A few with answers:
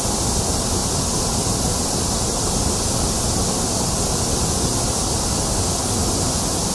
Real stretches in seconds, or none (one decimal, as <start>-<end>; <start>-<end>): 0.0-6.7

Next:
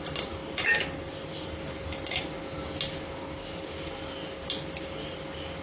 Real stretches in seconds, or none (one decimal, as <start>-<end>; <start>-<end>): 0.0-5.6

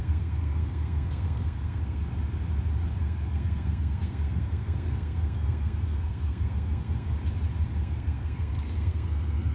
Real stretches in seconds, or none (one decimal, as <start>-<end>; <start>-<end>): 2.0-3.0; 7.2-7.8

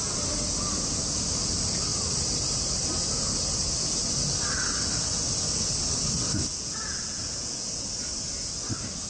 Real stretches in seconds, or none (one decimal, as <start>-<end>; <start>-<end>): 0.0-6.5; 7.9-9.1